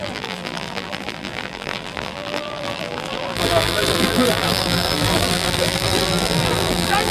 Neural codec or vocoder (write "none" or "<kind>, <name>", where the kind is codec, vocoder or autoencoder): vocoder, BigVGAN v2